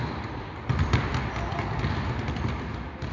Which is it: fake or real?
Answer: real